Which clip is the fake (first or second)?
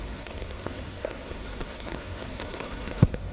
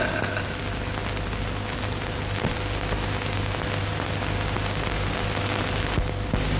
first